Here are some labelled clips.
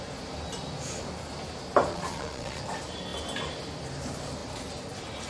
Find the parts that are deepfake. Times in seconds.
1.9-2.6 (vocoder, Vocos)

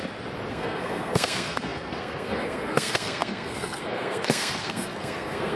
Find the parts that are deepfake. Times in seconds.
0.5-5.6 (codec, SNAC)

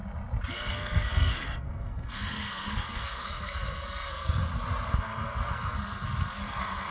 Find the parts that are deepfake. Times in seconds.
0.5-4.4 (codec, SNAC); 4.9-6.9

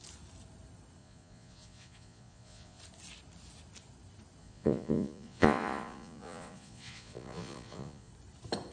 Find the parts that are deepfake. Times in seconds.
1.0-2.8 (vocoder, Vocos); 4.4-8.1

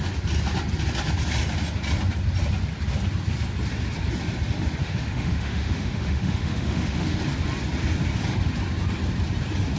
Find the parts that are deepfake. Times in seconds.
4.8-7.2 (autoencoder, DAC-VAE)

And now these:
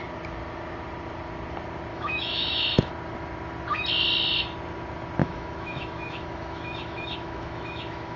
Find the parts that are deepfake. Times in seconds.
1.9-2.9 (autoencoder, DAC-VAE); 5.2-8.2

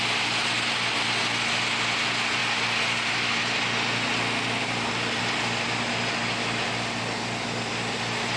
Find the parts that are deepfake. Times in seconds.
none

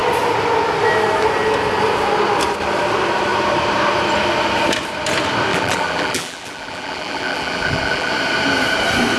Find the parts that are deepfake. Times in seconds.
5.5-8.1 (vocoder, BigVGAN v2)